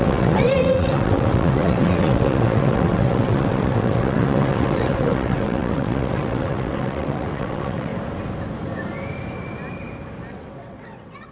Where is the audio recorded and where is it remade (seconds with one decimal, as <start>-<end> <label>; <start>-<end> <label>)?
0.0-7.9 remade; 7.9-10.3 recorded; 10.3-11.3 remade